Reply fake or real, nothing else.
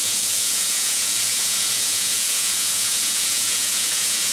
fake